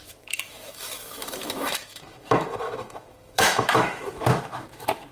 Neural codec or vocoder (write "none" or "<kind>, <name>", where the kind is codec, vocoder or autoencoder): autoencoder, DAC-VAE